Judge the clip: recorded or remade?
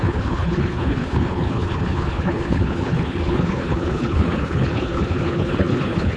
remade